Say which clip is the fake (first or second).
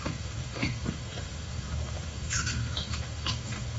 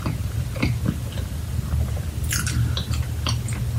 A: first